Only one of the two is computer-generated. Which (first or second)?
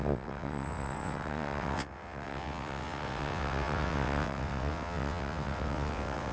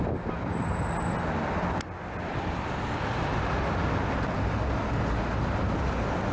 first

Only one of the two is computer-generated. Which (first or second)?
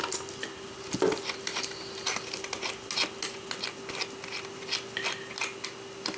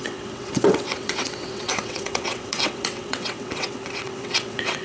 second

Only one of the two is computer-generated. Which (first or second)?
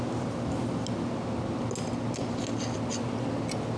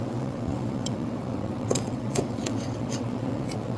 second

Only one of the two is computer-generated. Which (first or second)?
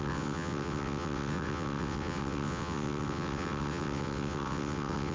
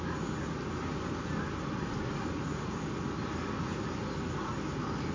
first